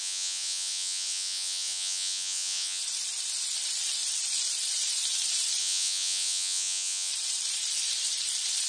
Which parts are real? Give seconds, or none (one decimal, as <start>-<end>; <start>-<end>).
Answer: 2.8-5.6; 7.1-8.7